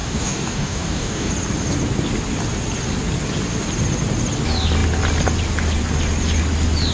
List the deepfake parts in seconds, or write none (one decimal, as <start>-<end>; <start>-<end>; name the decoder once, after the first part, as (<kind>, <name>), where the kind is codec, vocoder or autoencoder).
0.0-1.3 (codec, DAC)